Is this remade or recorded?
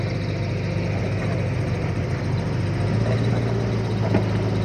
recorded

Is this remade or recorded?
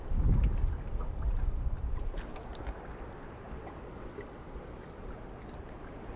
recorded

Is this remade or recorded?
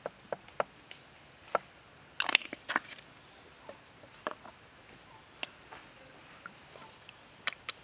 recorded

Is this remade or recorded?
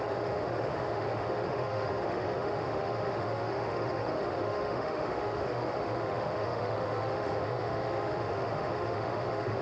remade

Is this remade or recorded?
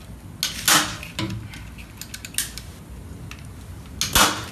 recorded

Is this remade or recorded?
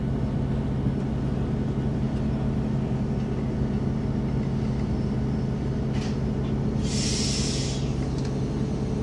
recorded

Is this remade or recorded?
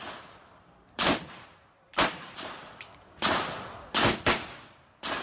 remade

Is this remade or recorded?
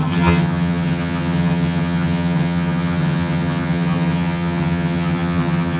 remade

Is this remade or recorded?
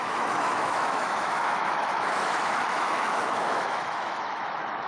remade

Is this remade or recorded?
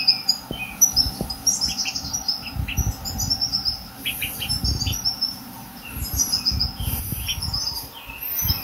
recorded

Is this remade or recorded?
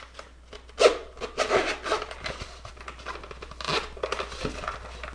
recorded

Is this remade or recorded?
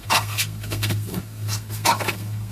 remade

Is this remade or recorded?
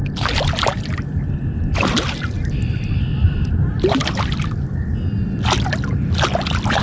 recorded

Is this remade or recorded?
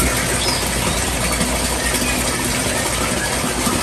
recorded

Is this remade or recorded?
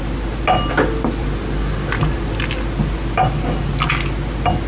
recorded